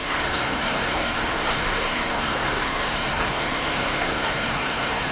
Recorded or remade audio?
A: remade